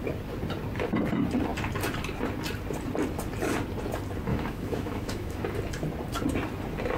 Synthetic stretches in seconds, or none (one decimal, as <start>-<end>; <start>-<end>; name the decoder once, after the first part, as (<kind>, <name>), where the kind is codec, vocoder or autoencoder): 4.3-5.4 (autoencoder, DAC-VAE)